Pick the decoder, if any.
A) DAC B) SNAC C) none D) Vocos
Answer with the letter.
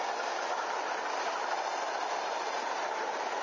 C